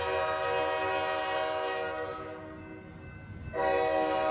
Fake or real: real